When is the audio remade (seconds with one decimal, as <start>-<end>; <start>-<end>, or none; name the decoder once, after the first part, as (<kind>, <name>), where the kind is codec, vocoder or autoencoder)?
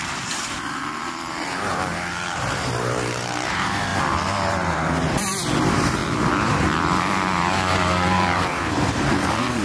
0.0-3.9 (vocoder, BigVGAN v2); 4.5-6.0; 7.0-9.6